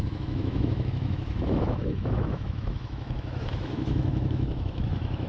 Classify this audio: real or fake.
fake